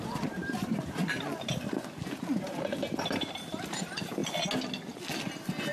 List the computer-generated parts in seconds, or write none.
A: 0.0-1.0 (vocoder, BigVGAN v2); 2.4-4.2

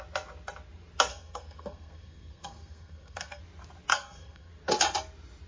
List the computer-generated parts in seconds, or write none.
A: 1.1-3.4 (codec, SNAC); 3.9-4.5

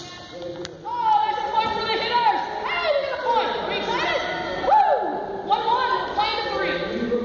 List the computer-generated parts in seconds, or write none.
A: 5.1-6.2 (vocoder, BigVGAN v2)

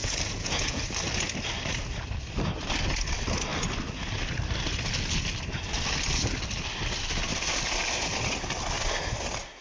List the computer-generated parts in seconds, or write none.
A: 0.0-0.8 (vocoder, Vocos)